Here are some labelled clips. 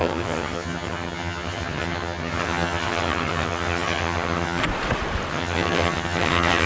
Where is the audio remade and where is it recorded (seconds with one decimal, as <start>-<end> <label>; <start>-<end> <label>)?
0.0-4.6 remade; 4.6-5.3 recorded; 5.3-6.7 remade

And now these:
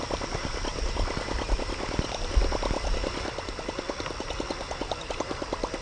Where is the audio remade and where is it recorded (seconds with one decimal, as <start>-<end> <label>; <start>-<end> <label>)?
0.0-5.8 recorded

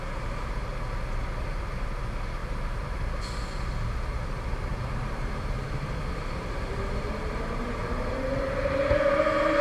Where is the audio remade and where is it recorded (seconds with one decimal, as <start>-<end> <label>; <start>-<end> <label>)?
0.0-4.7 recorded; 4.7-9.0 remade; 9.0-9.6 recorded

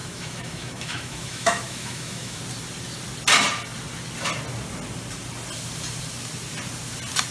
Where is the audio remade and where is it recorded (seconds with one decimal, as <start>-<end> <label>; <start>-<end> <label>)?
0.0-2.4 remade; 2.4-7.3 recorded

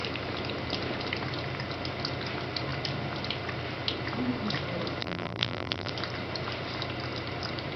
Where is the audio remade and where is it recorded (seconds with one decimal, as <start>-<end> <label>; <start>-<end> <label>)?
0.0-5.0 recorded; 5.0-5.9 remade; 5.9-7.8 recorded

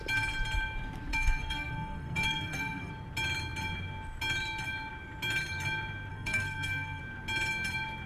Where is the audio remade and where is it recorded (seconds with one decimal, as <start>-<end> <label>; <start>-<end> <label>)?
0.0-1.1 recorded; 1.1-2.9 remade; 2.9-6.1 recorded; 6.1-7.0 remade; 7.0-8.1 recorded

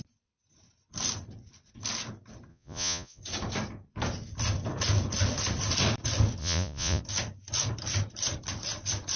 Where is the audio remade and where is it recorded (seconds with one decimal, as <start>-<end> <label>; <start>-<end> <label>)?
0.0-2.5 recorded; 2.5-3.2 remade; 3.2-6.4 recorded; 6.4-7.0 remade; 7.0-9.2 recorded